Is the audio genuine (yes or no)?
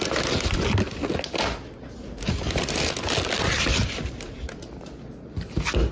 yes